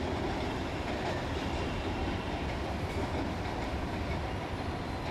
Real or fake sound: fake